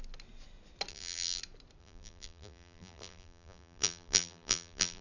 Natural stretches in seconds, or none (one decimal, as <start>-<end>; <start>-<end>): 0.0-0.9; 1.4-1.8